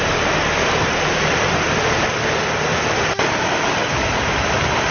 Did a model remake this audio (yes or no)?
no